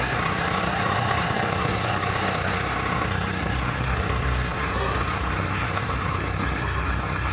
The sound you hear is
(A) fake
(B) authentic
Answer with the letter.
A